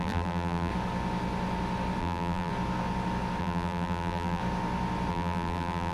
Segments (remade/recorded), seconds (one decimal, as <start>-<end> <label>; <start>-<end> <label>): 0.0-0.7 remade; 0.7-2.0 recorded; 2.0-2.5 remade; 2.5-3.4 recorded; 3.4-4.4 remade; 4.4-5.1 recorded; 5.1-5.9 remade